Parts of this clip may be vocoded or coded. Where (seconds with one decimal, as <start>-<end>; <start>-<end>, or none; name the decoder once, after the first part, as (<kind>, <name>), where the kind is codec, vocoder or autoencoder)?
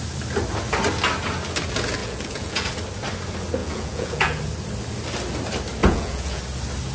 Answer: 2.0-2.7 (vocoder, Vocos); 3.6-4.4; 5.8-6.4